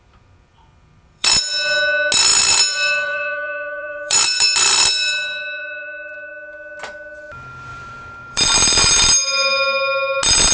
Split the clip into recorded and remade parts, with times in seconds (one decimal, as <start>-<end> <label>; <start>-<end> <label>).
0.0-0.5 recorded; 0.5-1.4 remade; 1.4-2.3 recorded; 2.3-6.3 remade; 6.3-7.7 recorded; 7.7-8.8 remade; 8.8-10.5 recorded